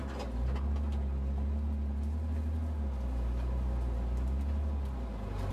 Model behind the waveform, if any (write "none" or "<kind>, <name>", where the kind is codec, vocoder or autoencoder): none